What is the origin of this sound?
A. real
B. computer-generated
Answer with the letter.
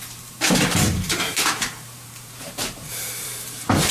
B